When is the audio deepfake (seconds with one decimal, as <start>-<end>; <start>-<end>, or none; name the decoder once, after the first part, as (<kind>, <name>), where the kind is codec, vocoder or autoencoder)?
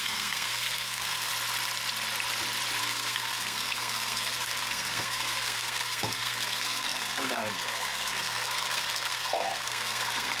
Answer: 0.0-1.3 (codec, SNAC); 2.8-10.4